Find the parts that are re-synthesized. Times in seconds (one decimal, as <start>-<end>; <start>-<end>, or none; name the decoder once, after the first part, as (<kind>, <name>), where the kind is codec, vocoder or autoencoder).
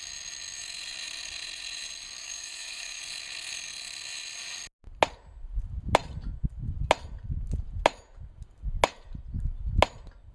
2.2-3.0 (autoencoder, DAC-VAE)